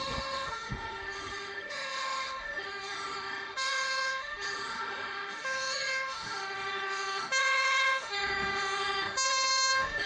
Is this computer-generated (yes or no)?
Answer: yes